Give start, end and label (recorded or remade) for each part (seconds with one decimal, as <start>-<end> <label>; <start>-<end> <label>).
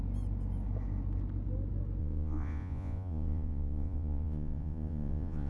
0.0-2.0 recorded; 2.0-5.5 remade